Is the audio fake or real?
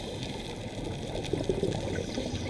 real